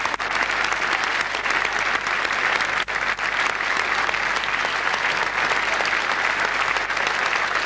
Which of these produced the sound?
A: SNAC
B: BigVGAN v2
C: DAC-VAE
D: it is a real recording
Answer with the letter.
D